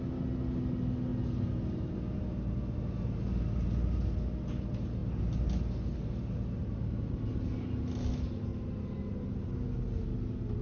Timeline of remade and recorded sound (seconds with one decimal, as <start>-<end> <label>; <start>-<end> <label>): 0.0-10.6 recorded